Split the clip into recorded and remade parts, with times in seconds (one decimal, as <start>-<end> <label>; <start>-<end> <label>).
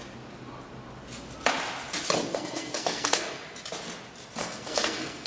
0.0-2.3 recorded; 2.3-3.4 remade; 3.4-4.4 recorded; 4.4-5.3 remade